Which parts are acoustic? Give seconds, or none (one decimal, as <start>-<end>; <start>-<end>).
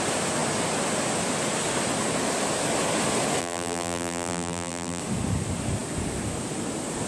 0.0-3.4; 5.0-7.1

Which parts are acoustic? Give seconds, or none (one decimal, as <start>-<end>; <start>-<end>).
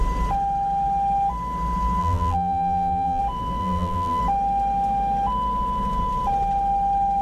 0.0-2.0; 3.2-3.6; 4.2-7.2